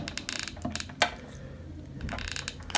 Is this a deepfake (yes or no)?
no